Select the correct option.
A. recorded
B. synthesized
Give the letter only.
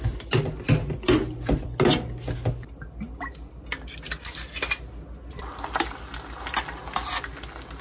A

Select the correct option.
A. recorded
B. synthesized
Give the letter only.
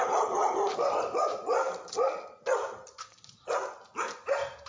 A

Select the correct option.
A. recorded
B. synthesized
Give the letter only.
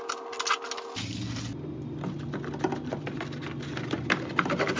A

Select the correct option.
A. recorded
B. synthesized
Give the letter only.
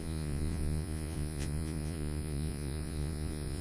B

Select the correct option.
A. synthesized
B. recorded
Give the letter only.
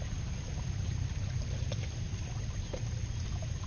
B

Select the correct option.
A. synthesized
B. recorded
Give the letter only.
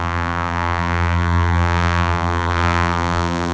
A